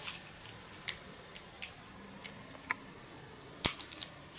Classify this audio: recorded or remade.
recorded